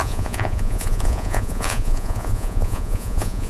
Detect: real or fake fake